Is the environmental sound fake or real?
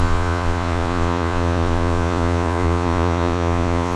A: fake